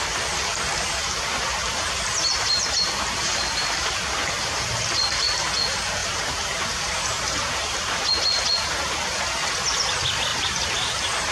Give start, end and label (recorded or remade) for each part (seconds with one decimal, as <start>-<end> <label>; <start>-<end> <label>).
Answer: 0.0-1.0 recorded; 1.0-4.9 remade; 4.9-6.0 recorded; 6.0-8.2 remade; 8.2-10.3 recorded; 10.3-11.3 remade